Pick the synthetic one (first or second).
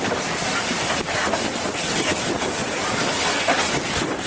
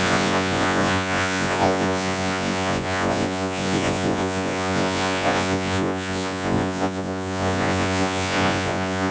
second